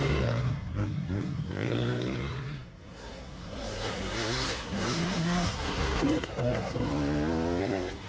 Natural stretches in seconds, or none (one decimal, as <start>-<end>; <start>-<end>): 6.9-7.6